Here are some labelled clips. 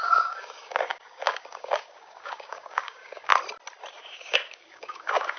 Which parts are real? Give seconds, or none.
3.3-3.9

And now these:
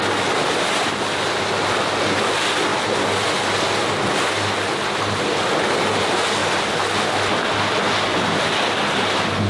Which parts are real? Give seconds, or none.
0.0-9.5

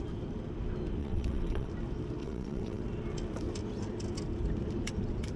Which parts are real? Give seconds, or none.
0.0-1.0; 1.7-2.2; 2.8-5.4

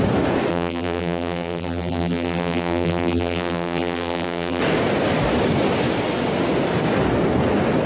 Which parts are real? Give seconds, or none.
0.0-0.5; 4.6-7.9

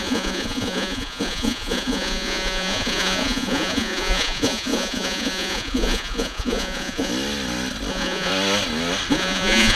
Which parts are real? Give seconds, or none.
7.1-7.9; 8.3-9.1

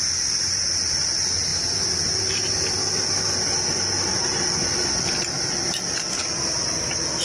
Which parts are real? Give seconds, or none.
0.0-7.2

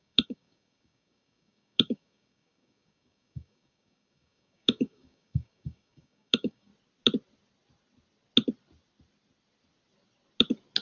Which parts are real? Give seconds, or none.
6.7-10.8

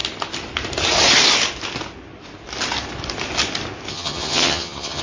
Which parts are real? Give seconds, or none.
0.0-3.9